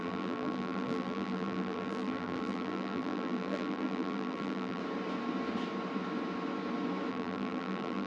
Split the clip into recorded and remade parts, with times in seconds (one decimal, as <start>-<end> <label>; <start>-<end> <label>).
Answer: 0.0-4.8 remade; 4.8-7.1 recorded; 7.1-8.1 remade